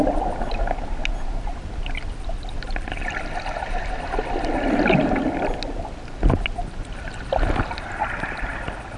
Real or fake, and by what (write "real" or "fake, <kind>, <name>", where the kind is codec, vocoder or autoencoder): real